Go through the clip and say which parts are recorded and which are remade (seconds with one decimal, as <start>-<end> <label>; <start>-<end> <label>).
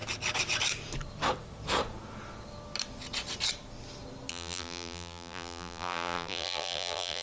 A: 0.0-4.3 recorded; 4.3-7.2 remade